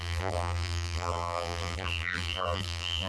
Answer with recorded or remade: remade